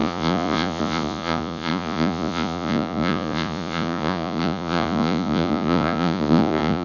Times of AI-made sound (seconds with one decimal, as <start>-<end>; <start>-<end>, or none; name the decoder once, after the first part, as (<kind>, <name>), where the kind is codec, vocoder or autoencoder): 0.0-6.8 (vocoder, Vocos)